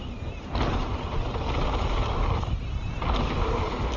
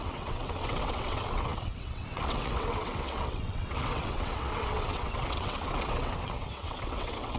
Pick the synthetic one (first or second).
second